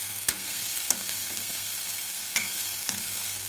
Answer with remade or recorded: remade